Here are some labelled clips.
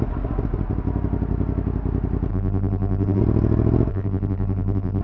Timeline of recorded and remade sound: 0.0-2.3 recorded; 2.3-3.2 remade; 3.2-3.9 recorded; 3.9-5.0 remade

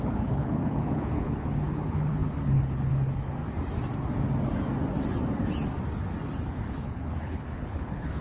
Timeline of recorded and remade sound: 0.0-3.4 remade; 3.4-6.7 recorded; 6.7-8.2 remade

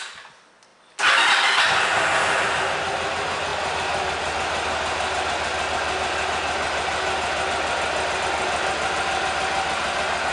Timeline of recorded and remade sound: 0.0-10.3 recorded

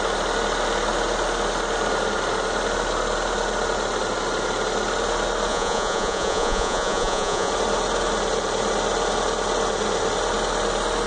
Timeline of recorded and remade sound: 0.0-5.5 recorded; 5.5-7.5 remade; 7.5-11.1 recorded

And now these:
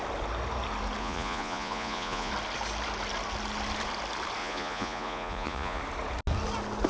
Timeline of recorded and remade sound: 0.0-1.0 recorded; 1.0-2.3 remade; 2.3-4.4 recorded; 4.4-5.8 remade; 5.8-6.9 recorded

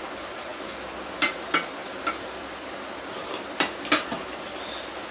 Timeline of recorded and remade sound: 0.0-5.1 recorded